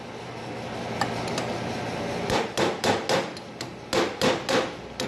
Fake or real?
real